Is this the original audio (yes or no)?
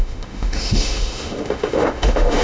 no